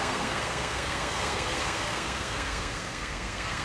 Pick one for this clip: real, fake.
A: fake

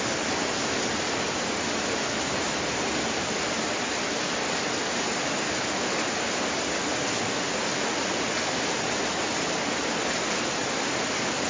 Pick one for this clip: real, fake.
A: real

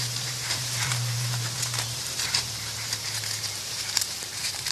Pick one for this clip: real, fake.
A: fake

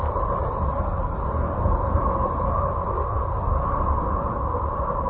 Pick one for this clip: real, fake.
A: real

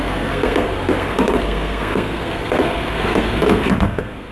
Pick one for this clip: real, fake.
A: fake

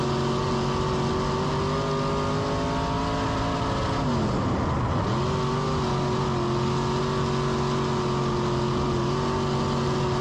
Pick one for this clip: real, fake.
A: real